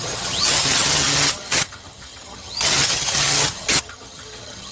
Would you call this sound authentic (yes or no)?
no